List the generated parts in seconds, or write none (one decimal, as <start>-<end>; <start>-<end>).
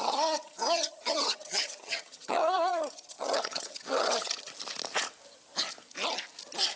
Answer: 0.0-4.5